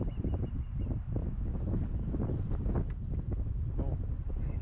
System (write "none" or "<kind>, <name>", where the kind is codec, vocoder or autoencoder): none